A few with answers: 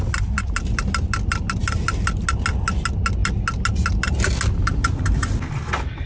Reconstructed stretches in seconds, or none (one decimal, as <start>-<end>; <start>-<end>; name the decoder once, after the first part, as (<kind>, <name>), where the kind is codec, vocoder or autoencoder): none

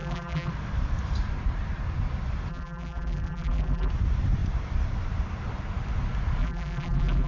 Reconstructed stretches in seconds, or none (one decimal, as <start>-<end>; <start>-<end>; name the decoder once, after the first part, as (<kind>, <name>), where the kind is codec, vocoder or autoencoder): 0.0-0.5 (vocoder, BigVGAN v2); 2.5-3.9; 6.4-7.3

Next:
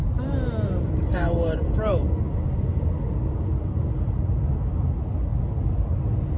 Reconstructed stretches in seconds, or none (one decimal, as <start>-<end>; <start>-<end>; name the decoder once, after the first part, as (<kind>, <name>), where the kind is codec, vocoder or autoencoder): 0.0-2.4 (vocoder, BigVGAN v2); 3.5-4.4